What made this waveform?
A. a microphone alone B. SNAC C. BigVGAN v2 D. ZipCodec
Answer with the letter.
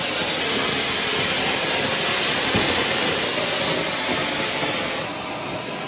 A